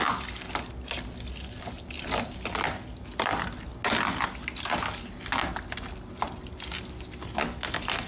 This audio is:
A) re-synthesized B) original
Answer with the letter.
B